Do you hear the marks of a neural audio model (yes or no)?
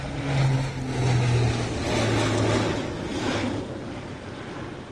no